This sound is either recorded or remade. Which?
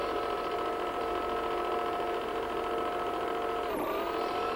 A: recorded